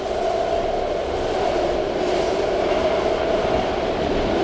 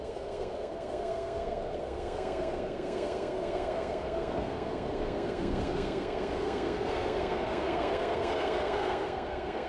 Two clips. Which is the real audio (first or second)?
first